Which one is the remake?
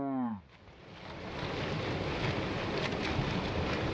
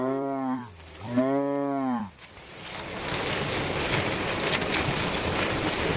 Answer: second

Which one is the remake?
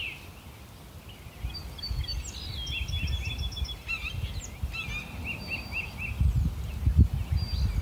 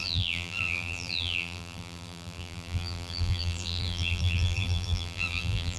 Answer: second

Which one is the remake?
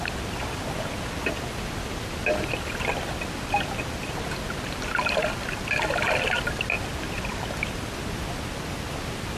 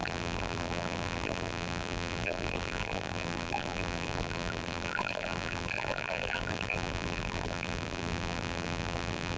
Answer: second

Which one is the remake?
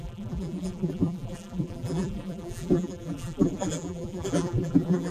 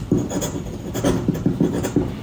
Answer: first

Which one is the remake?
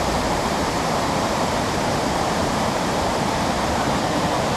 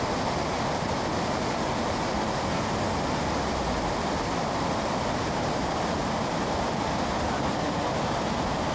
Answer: first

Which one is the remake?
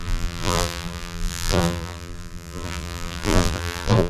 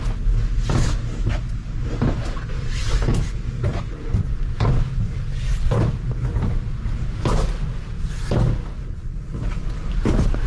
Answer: first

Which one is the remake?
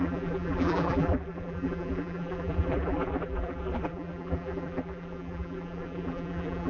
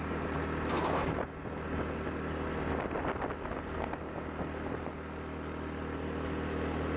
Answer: first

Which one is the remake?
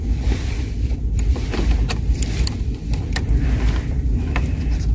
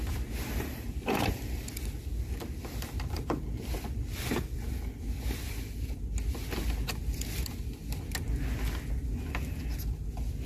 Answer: first